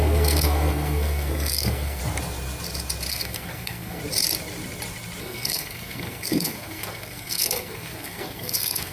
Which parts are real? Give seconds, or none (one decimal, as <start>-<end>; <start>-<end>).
2.0-3.1; 4.0-5.2